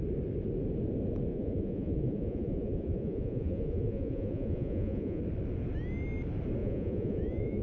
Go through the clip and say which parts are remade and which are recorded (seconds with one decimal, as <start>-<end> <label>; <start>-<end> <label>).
0.0-1.3 recorded; 1.3-5.2 remade; 5.2-6.6 recorded; 6.6-7.6 remade